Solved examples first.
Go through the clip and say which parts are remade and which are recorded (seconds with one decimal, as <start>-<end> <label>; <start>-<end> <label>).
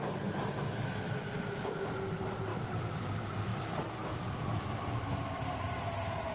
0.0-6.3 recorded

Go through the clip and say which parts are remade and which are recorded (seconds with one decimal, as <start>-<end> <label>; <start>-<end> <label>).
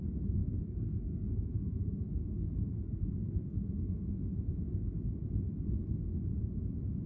0.0-0.4 recorded; 0.4-4.1 remade; 4.1-7.1 recorded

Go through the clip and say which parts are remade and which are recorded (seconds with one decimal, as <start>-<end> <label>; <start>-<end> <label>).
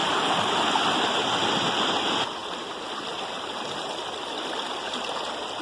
0.0-5.6 recorded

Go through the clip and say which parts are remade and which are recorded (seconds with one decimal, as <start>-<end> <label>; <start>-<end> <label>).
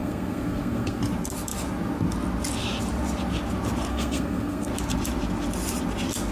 0.0-1.0 remade; 1.0-3.9 recorded; 3.9-4.7 remade; 4.7-6.3 recorded